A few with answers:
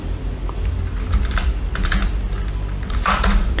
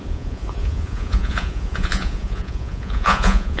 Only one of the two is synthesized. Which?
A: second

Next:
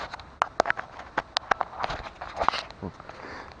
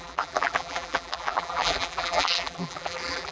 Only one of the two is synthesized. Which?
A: second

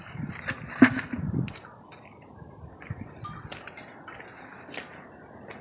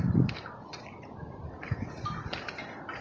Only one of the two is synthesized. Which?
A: first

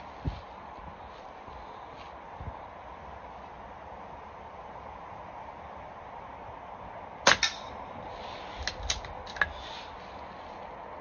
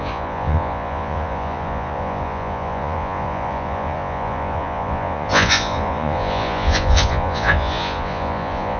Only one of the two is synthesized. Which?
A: second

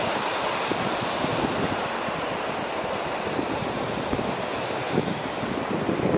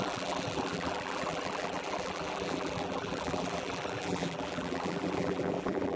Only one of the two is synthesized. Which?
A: second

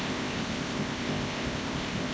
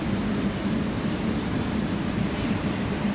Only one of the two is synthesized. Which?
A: first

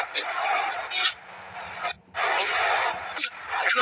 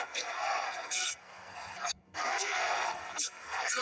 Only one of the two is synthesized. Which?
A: second